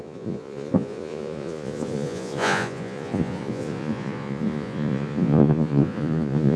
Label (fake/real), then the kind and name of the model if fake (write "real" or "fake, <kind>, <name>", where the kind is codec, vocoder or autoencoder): fake, vocoder, Vocos